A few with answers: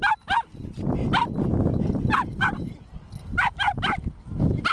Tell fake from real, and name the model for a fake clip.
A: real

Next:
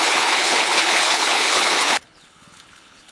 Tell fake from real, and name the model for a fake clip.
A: fake, codec, HILCodec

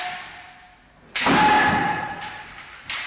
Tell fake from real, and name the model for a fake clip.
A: real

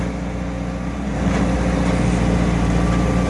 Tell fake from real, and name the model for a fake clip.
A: real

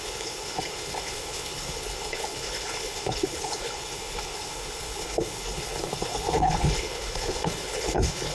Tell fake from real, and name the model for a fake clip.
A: fake, codec, HILCodec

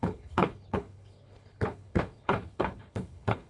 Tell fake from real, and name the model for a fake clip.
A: fake, codec, HILCodec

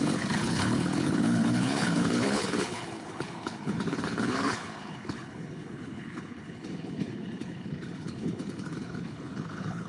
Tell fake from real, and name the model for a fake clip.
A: fake, codec, HILCodec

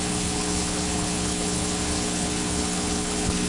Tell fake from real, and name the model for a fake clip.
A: fake, codec, HILCodec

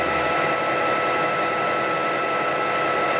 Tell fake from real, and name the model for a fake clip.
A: real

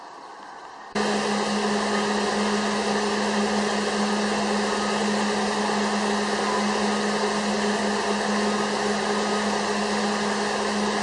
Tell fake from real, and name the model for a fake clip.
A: real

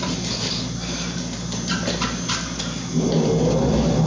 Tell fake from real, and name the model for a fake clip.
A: real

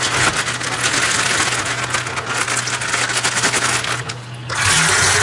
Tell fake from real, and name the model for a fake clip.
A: real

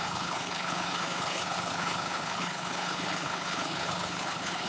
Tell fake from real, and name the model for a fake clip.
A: fake, codec, HILCodec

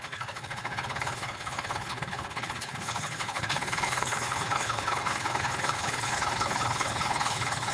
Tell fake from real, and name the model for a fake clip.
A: fake, codec, HILCodec